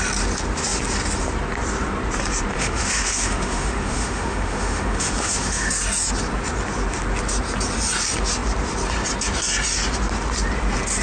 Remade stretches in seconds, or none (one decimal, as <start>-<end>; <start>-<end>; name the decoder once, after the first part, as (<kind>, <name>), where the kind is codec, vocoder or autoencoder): 2.5-5.7 (autoencoder, DAC-VAE)